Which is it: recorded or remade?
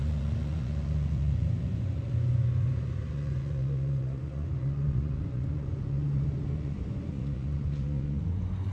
remade